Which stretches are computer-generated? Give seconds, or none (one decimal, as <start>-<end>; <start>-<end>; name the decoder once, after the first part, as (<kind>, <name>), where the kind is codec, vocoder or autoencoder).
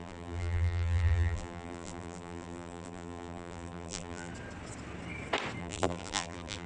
0.0-4.3 (vocoder, BigVGAN v2); 5.6-6.7